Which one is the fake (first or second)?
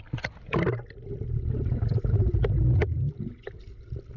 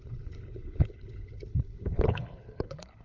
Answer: second